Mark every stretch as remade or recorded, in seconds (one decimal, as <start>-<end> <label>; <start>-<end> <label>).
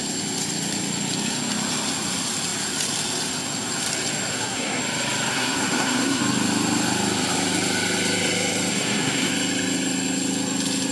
0.0-4.3 recorded; 4.3-4.8 remade; 4.8-5.3 recorded; 5.3-6.2 remade; 6.2-8.7 recorded; 8.7-9.3 remade; 9.3-10.9 recorded